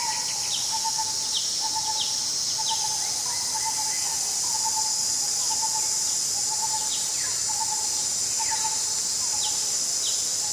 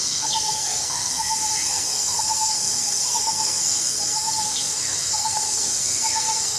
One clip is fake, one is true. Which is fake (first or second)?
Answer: second